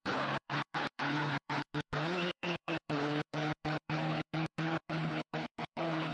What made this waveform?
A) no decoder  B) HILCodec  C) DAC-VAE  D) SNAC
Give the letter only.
B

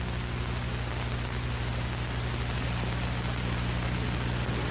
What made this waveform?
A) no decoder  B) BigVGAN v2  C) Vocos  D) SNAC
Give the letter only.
A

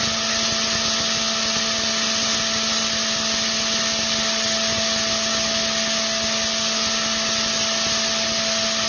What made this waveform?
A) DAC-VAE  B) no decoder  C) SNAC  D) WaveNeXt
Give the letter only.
B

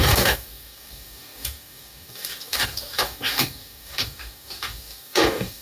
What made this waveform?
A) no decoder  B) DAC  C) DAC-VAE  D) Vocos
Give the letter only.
B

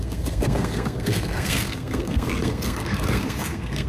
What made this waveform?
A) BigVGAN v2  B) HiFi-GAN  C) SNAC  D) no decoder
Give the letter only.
C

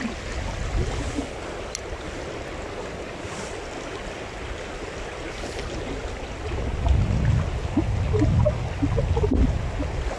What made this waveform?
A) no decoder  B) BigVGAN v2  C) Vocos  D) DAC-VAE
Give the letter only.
A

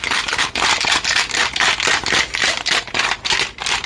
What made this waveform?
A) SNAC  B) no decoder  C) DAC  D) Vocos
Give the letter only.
B